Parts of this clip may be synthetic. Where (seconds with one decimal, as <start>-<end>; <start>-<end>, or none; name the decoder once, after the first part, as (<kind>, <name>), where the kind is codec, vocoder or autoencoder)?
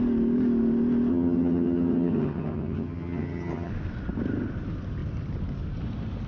1.1-3.7 (vocoder, HiFi-GAN)